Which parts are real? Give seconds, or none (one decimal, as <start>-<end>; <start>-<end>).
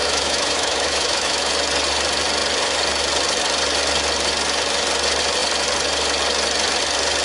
1.5-7.2